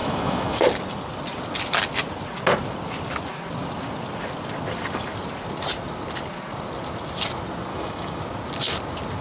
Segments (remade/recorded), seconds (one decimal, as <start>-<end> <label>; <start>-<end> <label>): 0.0-0.6 remade; 0.6-7.7 recorded; 7.7-8.2 remade; 8.2-9.2 recorded